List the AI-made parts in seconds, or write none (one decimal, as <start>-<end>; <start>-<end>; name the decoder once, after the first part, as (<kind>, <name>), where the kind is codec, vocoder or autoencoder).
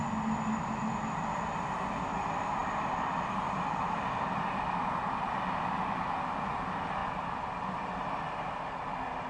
none